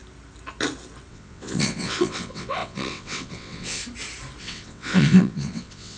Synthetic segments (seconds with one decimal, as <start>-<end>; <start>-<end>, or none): 1.1-3.8; 4.4-6.0